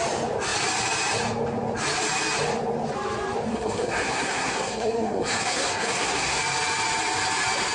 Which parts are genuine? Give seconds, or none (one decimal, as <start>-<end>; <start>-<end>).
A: 0.0-3.5; 6.4-7.7